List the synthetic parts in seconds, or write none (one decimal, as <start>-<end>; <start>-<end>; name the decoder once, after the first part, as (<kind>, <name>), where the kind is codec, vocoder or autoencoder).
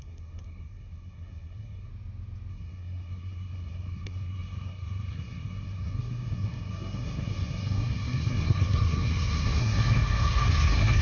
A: 0.0-1.9 (codec, SNAC); 2.5-11.0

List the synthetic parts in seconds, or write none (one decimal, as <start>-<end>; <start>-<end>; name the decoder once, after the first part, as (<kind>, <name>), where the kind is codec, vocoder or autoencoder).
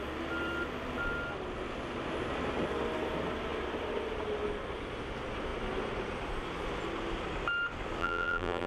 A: 8.0-8.7 (vocoder, BigVGAN v2)